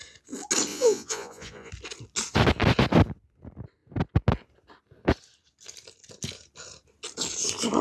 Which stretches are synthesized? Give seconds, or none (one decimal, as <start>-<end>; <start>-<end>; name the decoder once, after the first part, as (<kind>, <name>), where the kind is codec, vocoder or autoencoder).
0.7-1.7 (vocoder, Vocos)